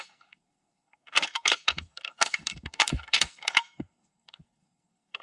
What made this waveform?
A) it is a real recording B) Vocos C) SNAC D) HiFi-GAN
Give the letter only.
C